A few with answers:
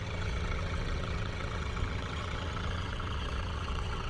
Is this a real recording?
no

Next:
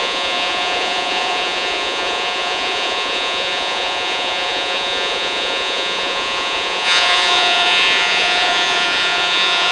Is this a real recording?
no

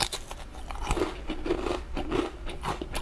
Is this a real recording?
yes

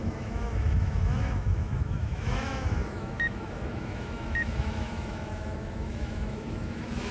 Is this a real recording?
no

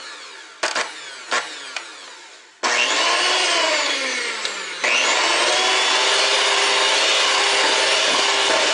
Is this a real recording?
yes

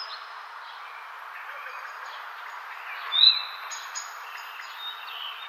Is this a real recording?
yes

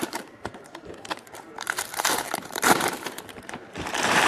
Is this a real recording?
no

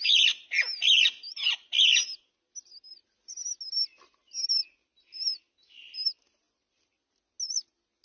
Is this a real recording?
yes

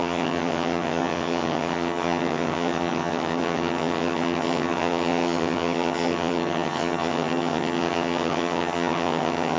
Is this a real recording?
no